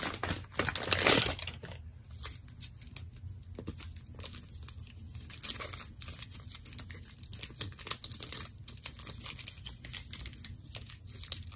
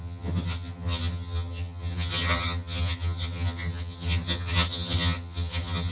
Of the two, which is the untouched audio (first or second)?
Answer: first